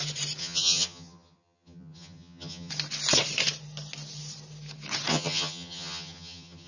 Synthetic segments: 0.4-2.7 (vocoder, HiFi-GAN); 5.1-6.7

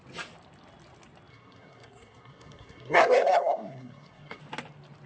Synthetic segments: 1.3-4.4 (codec, SNAC)

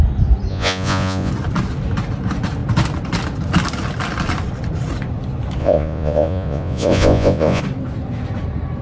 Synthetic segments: 0.5-1.3 (vocoder, Vocos); 5.6-7.6

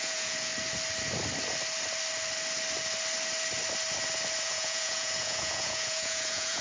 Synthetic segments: 0.0-0.5 (vocoder, Vocos); 4.4-6.6